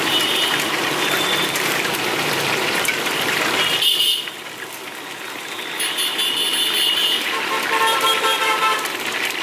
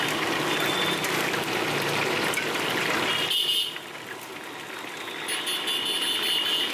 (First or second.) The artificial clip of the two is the first